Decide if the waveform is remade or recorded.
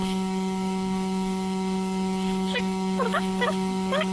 remade